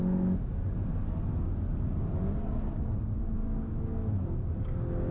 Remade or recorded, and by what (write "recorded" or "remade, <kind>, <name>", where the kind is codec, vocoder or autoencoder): recorded